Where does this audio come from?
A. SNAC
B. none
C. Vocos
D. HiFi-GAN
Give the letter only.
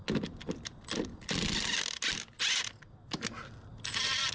B